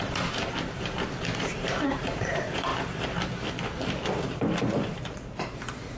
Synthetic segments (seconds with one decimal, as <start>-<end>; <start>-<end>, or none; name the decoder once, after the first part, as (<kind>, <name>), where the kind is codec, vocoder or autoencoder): 0.0-2.7 (vocoder, BigVGAN v2); 4.6-6.0

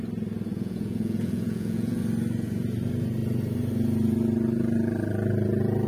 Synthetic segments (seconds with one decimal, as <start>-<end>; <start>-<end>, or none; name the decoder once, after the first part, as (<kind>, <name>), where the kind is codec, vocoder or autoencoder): 0.5-2.0 (vocoder, Vocos)

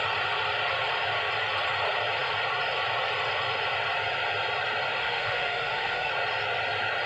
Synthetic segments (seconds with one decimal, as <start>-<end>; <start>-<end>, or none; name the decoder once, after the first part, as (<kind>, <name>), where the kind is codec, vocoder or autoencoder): 5.0-6.1 (autoencoder, DAC-VAE)